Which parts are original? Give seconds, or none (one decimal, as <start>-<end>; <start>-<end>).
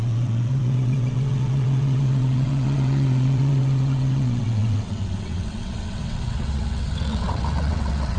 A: none